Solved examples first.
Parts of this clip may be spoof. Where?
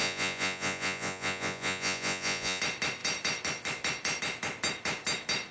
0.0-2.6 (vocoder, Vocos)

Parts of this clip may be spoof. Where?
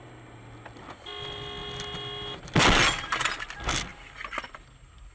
none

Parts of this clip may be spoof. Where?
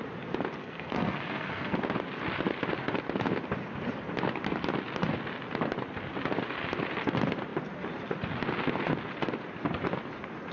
0.6-1.8 (codec, SNAC)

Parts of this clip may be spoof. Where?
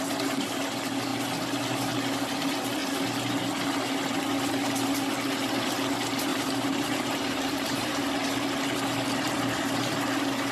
6.3-8.0 (vocoder, BigVGAN v2)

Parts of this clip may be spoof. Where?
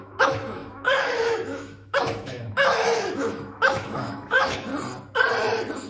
0.0-4.7 (autoencoder, DAC-VAE)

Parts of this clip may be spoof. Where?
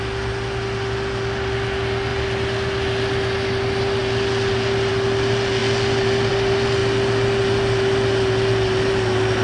none